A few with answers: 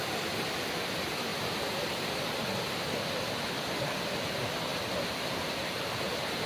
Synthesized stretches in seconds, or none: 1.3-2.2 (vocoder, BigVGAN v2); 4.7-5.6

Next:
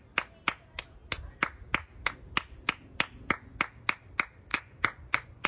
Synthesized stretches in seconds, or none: 4.5-5.5 (vocoder, Vocos)

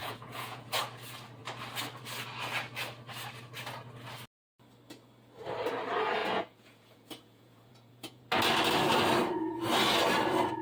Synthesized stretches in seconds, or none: 0.0-0.8 (vocoder, Vocos); 6.2-8.2

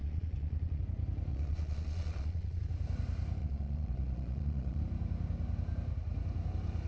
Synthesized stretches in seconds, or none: 0.0-0.8 (vocoder, Vocos); 1.3-2.6; 3.4-4.8

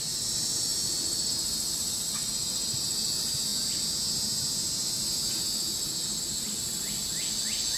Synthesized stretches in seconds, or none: none

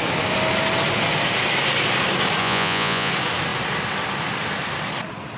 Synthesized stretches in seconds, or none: 2.4-3.1 (vocoder, Vocos)

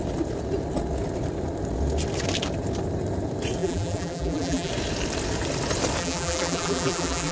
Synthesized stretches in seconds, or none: 3.6-4.7 (vocoder, BigVGAN v2); 6.0-7.3